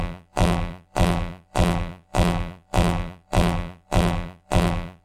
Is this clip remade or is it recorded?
remade